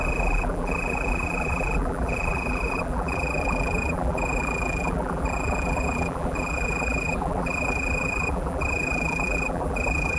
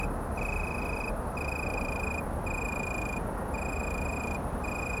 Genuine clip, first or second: second